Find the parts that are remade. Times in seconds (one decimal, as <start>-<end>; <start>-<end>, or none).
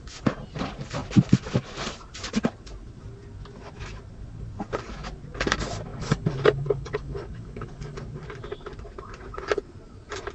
5.9-8.0